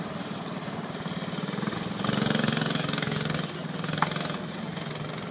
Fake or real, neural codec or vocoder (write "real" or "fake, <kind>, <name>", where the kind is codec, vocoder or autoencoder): real